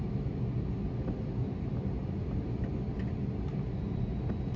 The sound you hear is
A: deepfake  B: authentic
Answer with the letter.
B